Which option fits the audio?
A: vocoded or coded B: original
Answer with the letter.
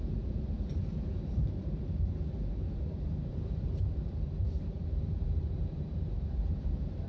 A